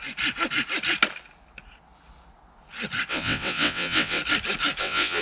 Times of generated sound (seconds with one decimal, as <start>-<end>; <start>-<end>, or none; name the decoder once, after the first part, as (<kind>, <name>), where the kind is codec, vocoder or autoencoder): 3.1-4.2 (vocoder, WaveNeXt); 4.8-5.2